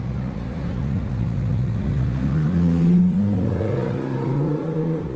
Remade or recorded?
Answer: remade